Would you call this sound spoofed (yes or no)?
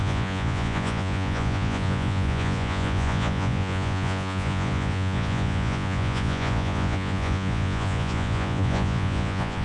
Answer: yes